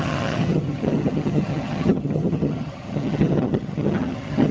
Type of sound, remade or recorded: remade